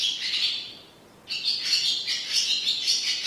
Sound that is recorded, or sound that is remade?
recorded